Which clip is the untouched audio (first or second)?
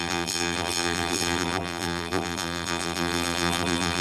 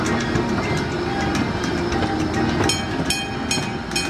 second